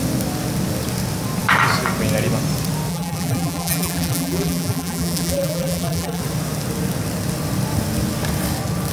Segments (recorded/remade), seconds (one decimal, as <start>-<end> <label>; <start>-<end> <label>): 0.0-2.9 recorded; 2.9-6.2 remade; 6.2-8.9 recorded